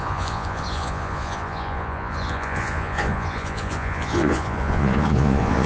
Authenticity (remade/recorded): remade